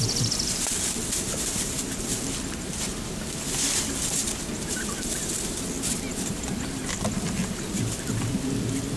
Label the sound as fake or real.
fake